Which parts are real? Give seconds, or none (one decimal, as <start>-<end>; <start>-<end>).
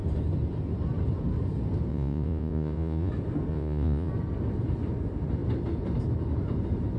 0.0-1.9; 3.1-3.5; 4.1-7.0